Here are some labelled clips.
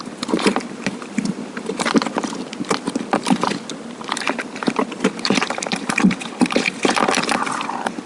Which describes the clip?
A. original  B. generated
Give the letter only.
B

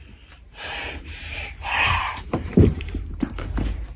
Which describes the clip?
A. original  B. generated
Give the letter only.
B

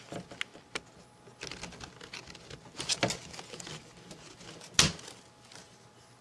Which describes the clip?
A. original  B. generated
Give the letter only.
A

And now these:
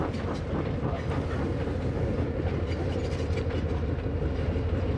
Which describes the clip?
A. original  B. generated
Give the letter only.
A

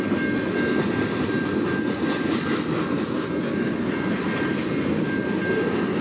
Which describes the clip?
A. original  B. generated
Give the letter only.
A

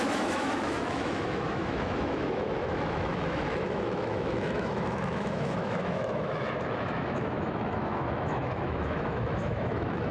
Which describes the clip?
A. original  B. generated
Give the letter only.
B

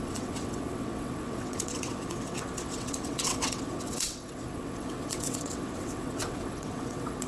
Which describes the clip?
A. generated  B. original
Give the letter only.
A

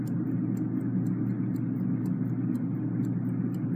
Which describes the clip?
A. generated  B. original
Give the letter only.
B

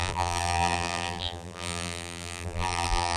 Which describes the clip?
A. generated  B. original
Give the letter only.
A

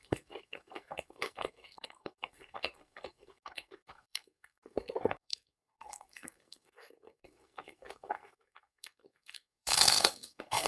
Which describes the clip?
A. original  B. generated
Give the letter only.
B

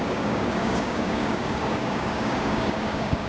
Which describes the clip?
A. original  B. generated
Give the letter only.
B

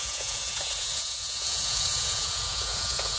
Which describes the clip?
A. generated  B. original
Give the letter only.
A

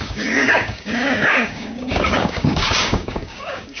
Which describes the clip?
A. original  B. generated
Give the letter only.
B